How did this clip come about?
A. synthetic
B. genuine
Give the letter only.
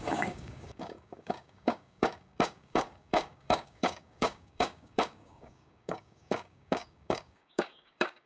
A